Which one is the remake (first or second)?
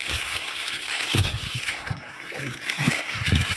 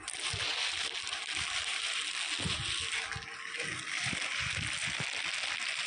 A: first